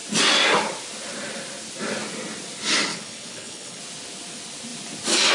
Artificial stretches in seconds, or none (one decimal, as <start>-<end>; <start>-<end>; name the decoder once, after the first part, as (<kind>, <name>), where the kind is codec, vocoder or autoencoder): 2.9-3.8 (codec, HILCodec)